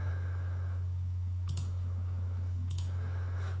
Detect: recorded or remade remade